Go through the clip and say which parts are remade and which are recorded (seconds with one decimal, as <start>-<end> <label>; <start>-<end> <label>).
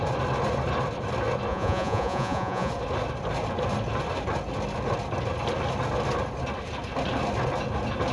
0.0-1.5 recorded; 1.5-2.7 remade; 2.7-8.1 recorded